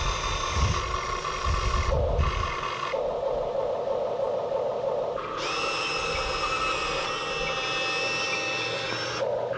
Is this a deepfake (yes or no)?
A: no